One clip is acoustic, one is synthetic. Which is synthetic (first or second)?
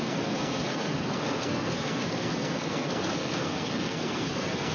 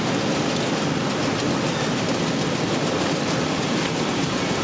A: first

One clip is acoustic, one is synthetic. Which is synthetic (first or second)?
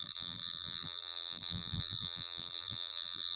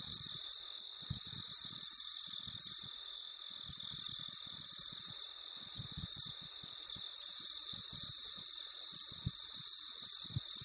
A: first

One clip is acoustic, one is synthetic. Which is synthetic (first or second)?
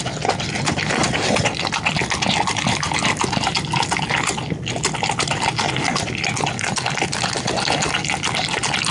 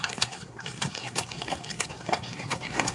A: second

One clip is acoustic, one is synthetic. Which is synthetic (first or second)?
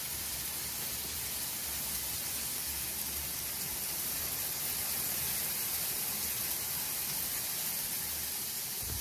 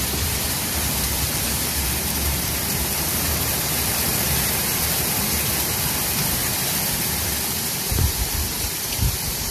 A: second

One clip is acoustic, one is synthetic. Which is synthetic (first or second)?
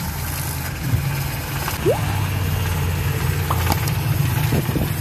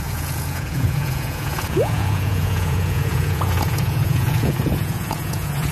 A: second